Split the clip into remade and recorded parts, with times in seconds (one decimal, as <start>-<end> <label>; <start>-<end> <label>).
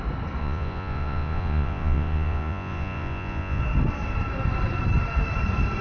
0.0-0.4 recorded; 0.4-3.6 remade; 3.6-5.8 recorded